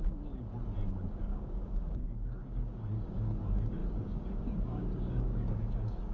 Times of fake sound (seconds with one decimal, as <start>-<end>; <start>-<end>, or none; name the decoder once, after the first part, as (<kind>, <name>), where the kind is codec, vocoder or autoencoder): 1.1-6.1 (codec, DAC)